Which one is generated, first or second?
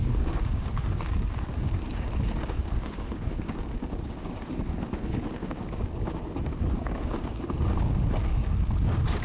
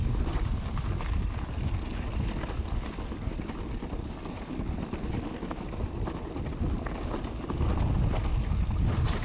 first